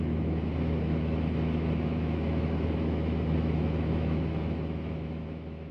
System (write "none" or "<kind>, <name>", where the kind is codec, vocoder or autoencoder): autoencoder, DAC-VAE